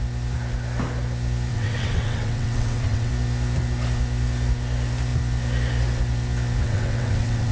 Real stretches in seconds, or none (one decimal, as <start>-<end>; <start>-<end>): 0.0-1.5; 3.1-6.6